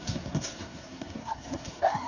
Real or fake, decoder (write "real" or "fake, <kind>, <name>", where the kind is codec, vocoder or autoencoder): fake, codec, SNAC